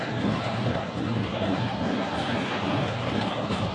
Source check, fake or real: fake